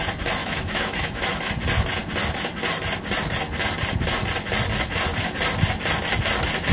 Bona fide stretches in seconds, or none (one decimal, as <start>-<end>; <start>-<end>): 0.0-0.4; 1.5-6.7